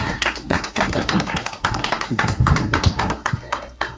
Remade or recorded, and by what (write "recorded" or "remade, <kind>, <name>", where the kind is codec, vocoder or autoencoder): remade, codec, SNAC